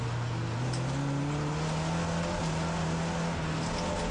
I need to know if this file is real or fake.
real